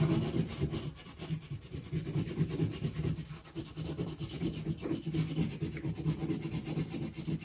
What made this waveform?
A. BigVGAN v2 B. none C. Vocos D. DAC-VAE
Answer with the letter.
B